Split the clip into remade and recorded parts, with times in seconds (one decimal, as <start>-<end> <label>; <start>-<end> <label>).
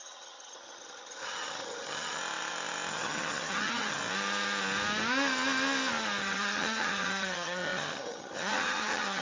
0.0-2.2 remade; 2.2-2.9 recorded; 2.9-4.0 remade; 4.0-6.2 recorded; 6.2-9.2 remade